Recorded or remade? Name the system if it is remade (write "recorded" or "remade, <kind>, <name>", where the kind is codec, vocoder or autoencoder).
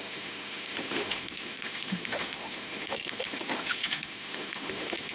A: remade, autoencoder, DAC-VAE